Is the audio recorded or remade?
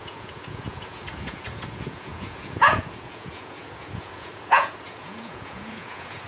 remade